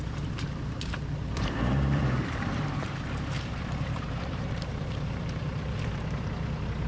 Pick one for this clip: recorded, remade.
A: remade